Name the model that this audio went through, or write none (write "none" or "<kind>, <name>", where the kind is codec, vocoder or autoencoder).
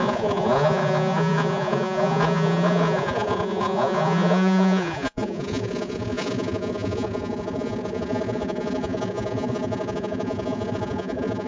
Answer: vocoder, Vocos